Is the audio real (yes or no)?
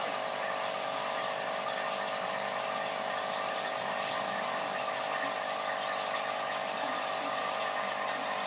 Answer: no